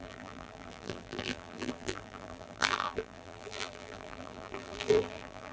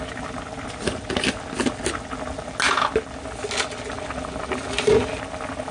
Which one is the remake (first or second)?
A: first